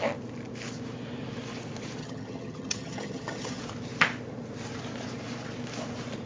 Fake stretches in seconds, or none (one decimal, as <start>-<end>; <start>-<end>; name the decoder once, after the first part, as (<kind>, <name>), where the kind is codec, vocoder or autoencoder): 2.0-3.6 (vocoder, HiFi-GAN)